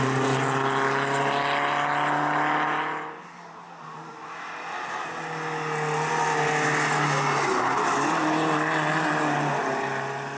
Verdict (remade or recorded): recorded